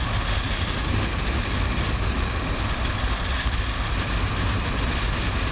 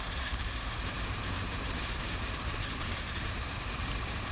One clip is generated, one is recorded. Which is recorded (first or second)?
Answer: first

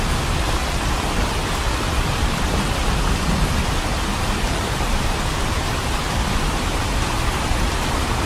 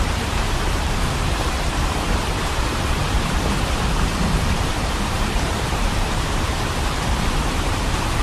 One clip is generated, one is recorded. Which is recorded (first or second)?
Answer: first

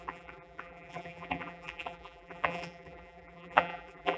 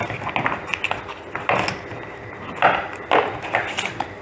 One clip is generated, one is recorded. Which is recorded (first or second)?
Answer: second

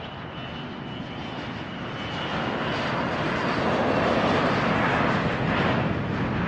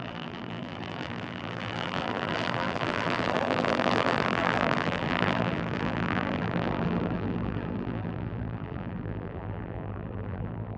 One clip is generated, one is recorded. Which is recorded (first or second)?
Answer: first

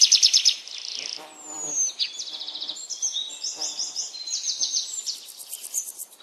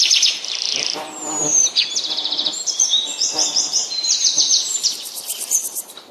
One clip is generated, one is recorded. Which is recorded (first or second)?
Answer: first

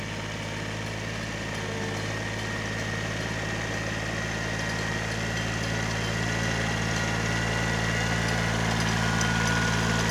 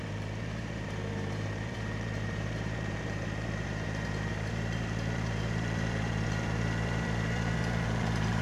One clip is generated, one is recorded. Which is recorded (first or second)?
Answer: first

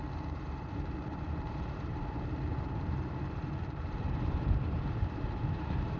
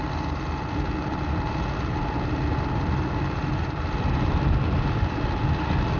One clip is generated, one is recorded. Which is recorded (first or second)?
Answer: second